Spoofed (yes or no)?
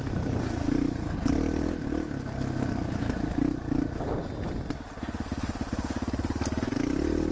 no